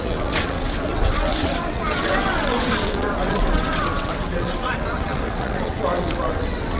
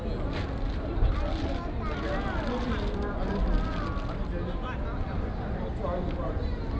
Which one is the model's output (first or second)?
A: first